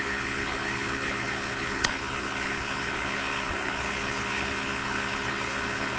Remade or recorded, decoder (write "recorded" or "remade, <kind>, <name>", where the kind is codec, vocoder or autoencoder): remade, codec, HILCodec